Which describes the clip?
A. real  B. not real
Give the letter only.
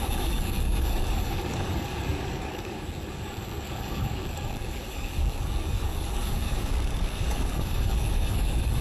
B